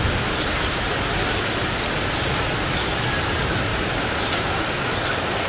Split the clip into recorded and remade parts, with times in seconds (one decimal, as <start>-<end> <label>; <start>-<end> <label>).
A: 0.0-5.5 recorded